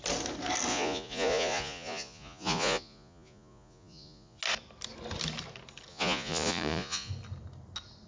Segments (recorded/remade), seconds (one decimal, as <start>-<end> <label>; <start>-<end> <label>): 0.0-0.7 recorded; 0.7-4.4 remade; 4.4-5.9 recorded; 5.9-7.1 remade; 7.1-8.1 recorded